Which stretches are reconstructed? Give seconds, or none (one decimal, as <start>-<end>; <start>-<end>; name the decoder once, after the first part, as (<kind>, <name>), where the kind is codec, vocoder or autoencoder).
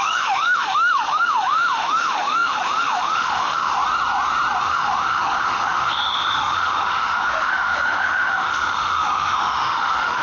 0.0-3.8 (autoencoder, DAC-VAE); 4.6-10.2